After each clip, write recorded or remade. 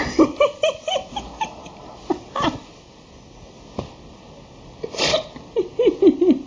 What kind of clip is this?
recorded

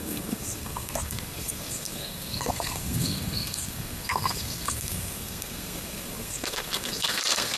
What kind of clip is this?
remade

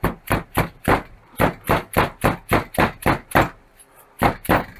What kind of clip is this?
recorded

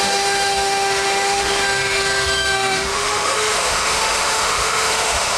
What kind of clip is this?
remade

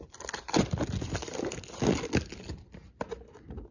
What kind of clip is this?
recorded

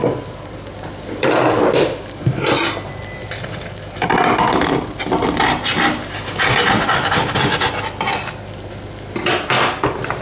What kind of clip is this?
recorded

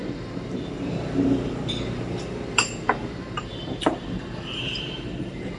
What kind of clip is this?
remade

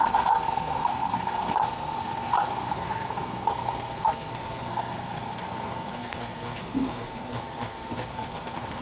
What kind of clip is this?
remade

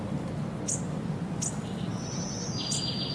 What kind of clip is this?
recorded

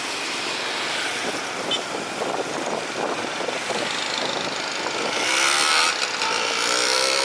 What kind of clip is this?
recorded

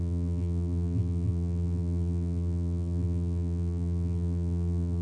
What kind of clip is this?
remade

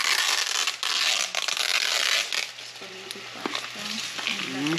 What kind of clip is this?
recorded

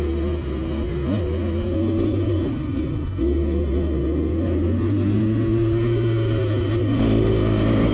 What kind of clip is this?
recorded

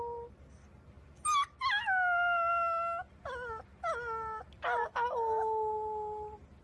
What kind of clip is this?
recorded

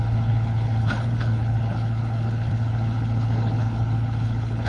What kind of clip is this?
remade